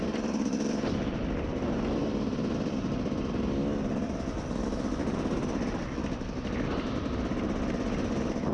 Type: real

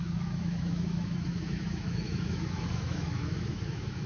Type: fake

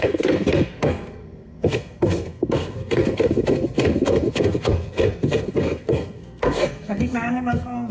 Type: fake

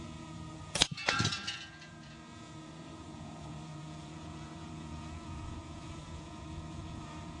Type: fake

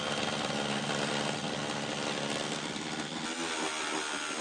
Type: real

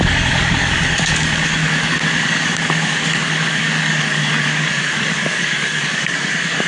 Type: fake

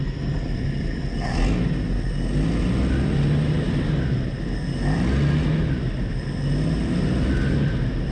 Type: real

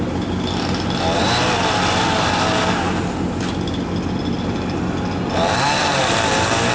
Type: real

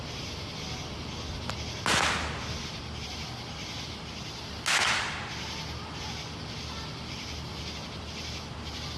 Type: real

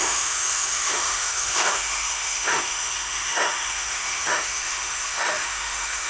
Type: fake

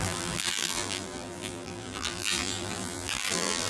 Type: fake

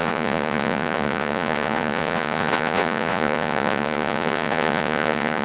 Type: fake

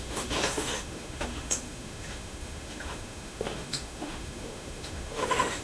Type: fake